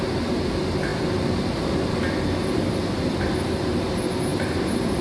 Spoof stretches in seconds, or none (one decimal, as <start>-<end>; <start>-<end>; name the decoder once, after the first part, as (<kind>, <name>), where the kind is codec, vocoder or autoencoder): none